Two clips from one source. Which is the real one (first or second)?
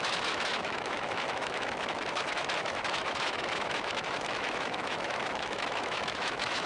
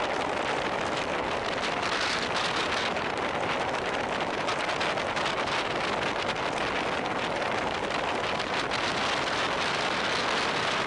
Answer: second